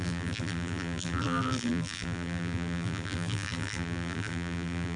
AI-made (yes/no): yes